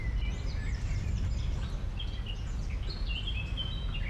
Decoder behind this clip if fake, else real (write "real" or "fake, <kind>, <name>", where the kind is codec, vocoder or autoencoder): real